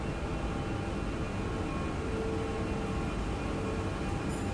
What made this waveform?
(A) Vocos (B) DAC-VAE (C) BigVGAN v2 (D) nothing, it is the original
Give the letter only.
D